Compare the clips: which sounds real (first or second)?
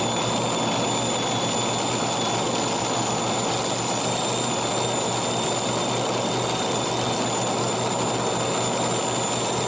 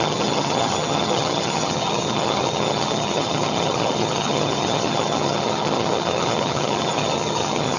first